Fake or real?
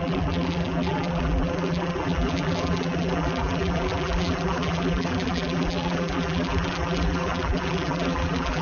fake